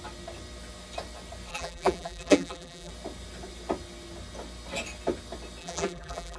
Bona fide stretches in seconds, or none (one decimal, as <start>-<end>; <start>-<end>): 0.0-1.5; 2.9-5.6